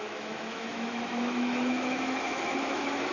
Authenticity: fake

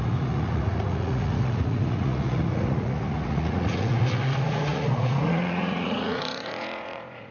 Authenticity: fake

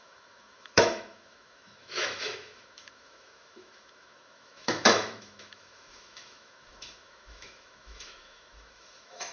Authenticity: fake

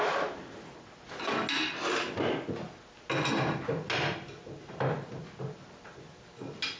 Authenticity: real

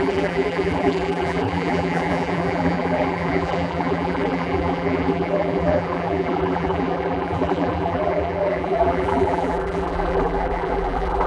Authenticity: fake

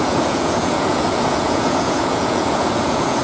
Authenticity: fake